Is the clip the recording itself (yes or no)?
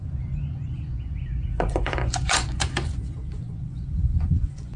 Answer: no